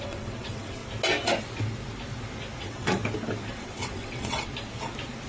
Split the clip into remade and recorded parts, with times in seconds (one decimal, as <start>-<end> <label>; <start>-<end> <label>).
0.0-0.8 remade; 0.8-2.6 recorded; 2.6-3.0 remade; 3.0-3.6 recorded; 3.6-4.5 remade; 4.5-5.3 recorded